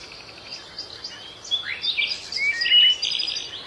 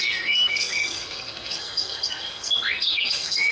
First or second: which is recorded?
first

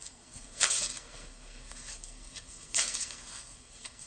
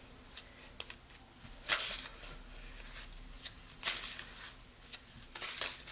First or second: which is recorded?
second